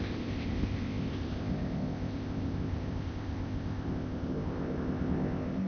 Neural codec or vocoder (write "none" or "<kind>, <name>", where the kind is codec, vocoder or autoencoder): codec, ZipCodec